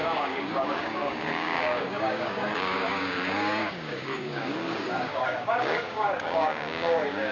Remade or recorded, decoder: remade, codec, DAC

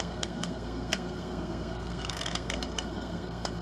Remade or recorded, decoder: remade, codec, SNAC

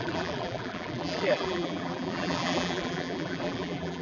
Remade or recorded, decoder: remade, vocoder, BigVGAN v2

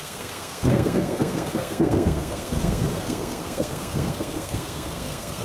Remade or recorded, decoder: remade, codec, SNAC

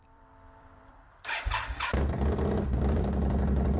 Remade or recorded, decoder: remade, vocoder, BigVGAN v2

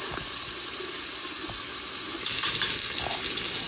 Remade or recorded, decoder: recorded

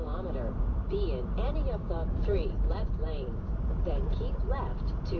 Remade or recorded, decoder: remade, vocoder, BigVGAN v2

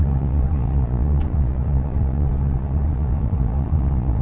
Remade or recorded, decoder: remade, vocoder, Vocos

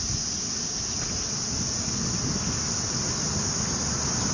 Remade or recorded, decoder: recorded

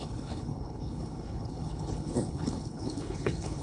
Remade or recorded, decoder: remade, codec, HILCodec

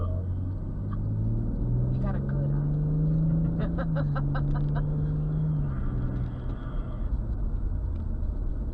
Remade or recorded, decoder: recorded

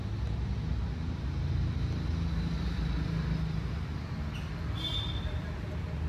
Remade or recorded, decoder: recorded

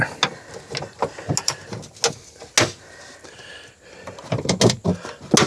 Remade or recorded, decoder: recorded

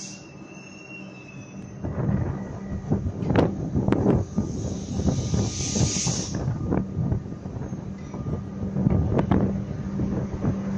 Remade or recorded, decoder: recorded